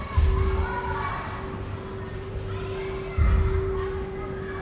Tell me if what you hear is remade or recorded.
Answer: recorded